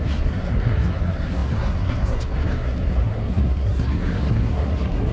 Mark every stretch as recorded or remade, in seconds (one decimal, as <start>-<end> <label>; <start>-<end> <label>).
0.0-5.1 remade